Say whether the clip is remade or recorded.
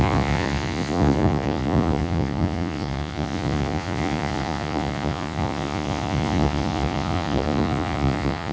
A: remade